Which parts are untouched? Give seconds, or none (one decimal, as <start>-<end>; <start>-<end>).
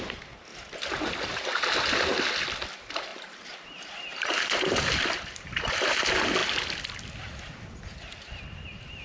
0.0-0.5; 1.1-3.1; 5.7-9.0